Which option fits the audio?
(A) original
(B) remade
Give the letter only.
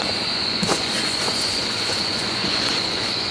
B